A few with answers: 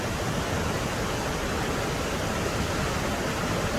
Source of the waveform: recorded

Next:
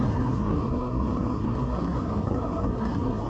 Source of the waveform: remade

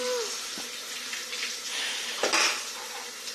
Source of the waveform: remade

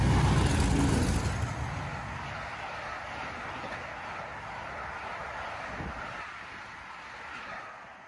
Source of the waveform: recorded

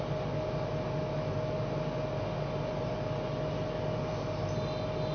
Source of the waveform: recorded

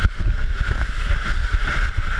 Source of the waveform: recorded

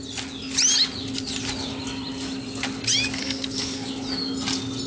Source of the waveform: recorded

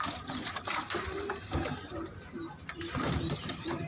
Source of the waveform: remade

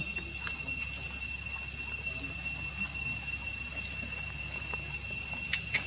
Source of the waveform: recorded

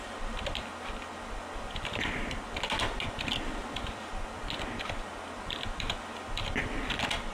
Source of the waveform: recorded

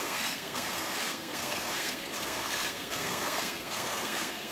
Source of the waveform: remade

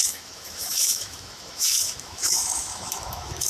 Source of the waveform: remade